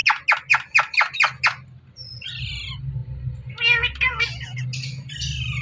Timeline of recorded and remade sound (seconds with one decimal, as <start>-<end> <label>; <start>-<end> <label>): 0.0-5.6 recorded